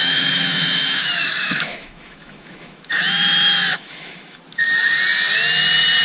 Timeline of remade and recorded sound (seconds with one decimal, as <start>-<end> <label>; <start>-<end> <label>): 0.0-3.2 remade; 3.2-3.7 recorded; 3.7-4.4 remade; 4.4-6.0 recorded